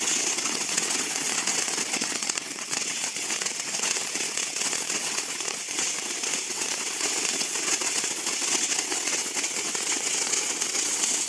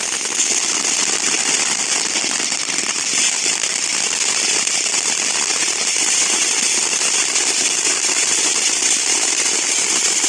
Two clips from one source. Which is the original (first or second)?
second